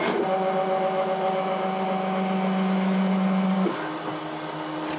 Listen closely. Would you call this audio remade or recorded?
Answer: recorded